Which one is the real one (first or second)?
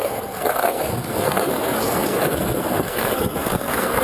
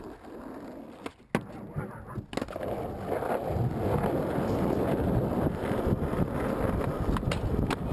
second